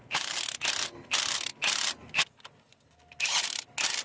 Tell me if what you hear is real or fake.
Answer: real